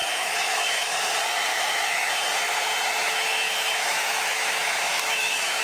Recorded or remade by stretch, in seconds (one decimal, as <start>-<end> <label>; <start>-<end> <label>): 0.0-1.1 remade; 1.1-1.5 recorded; 1.5-2.2 remade; 2.2-3.0 recorded; 3.0-5.6 remade